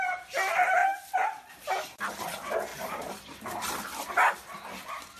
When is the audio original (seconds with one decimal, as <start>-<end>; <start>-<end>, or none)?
0.0-2.7; 3.7-5.2